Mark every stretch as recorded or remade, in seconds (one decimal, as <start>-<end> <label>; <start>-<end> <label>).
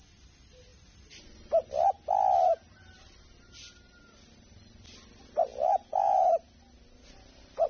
0.0-5.5 recorded; 5.5-6.3 remade; 6.3-7.7 recorded